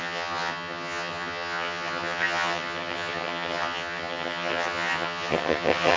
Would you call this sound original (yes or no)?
no